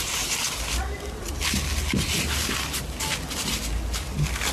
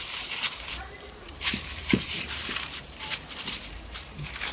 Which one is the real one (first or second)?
first